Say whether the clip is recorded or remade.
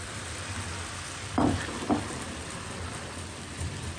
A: remade